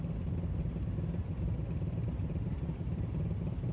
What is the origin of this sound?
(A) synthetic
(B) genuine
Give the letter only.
B